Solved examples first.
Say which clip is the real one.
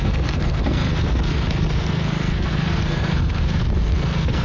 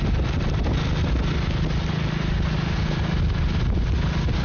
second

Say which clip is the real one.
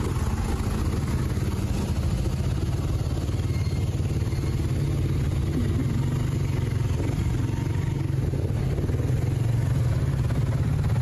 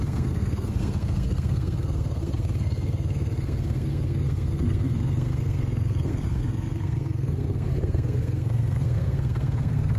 first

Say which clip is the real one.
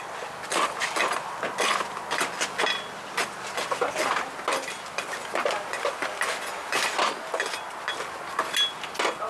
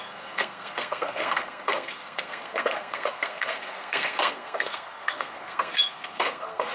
first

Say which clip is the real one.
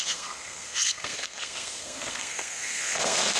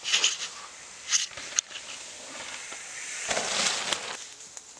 second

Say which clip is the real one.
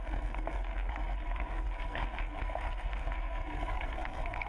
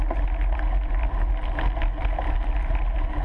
second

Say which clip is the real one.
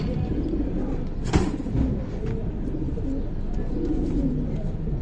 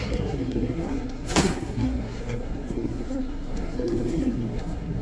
first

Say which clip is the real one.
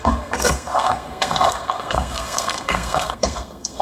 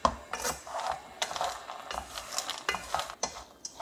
second